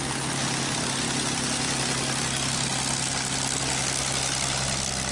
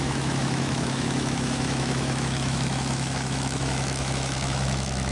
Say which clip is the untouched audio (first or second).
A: first